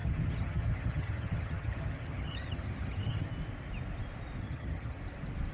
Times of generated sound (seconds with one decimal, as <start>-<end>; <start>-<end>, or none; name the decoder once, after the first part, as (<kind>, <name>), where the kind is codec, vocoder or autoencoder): 0.0-3.3 (vocoder, HiFi-GAN); 4.4-5.0